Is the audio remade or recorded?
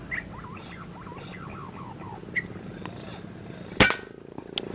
recorded